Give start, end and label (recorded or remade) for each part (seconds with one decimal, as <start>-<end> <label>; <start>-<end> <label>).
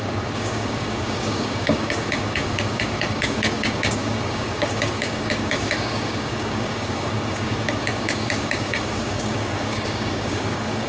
0.0-10.9 remade